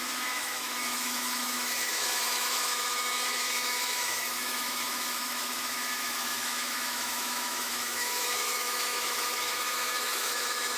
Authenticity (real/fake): fake